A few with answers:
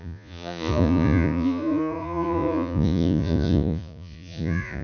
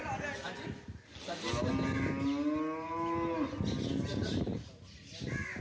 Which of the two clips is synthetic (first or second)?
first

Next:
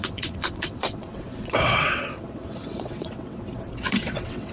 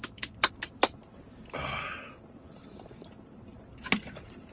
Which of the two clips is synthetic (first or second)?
first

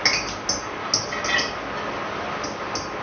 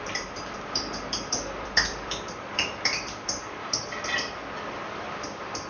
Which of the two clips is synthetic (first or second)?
second